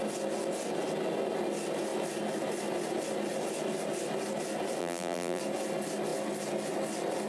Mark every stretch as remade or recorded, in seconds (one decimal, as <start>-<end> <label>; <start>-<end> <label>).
0.0-4.8 recorded; 4.8-5.4 remade; 5.4-7.3 recorded